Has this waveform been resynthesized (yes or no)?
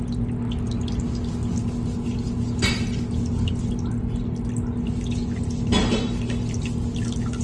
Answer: no